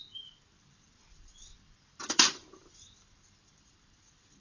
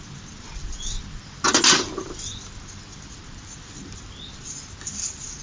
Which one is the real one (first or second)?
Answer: second